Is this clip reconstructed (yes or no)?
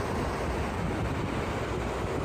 no